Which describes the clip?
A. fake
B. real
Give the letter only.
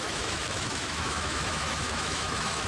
A